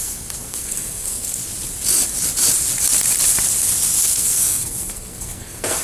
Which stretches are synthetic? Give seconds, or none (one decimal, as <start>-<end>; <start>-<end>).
0.0-1.4; 4.0-5.8